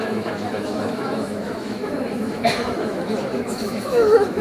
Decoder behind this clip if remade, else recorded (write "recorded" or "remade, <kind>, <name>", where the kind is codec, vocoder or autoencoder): remade, autoencoder, DAC-VAE